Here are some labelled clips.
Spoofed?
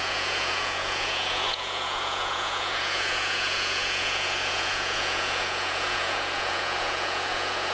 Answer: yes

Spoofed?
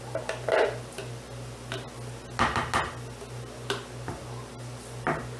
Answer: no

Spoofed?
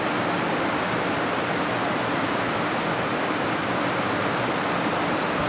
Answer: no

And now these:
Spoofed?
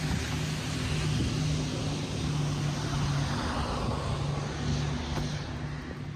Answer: no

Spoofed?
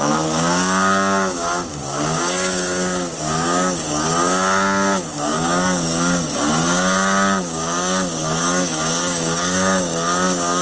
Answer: yes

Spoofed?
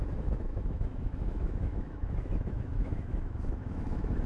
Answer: yes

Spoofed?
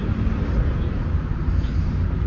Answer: no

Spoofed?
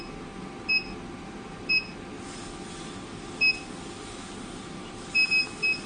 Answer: no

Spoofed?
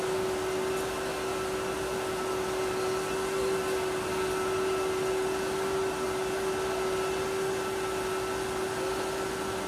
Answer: no